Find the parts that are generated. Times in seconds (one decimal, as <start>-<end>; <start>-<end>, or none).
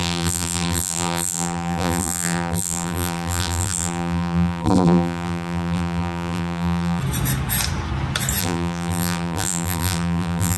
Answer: 0.0-7.0; 8.4-10.6